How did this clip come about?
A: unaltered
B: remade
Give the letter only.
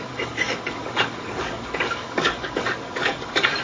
B